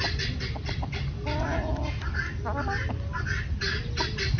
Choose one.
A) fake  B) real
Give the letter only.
B